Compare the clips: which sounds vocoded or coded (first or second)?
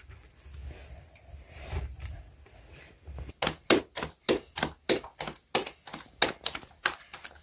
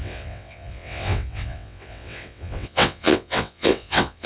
second